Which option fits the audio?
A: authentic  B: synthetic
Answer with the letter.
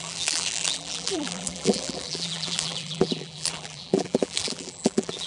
B